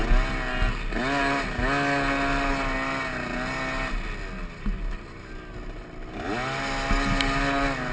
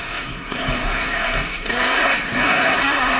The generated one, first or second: second